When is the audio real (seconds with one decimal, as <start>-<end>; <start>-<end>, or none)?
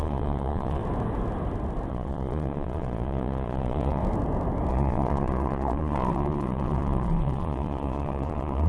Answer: 0.8-1.9; 4.0-4.7